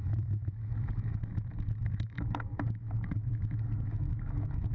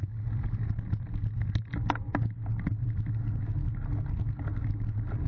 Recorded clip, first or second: second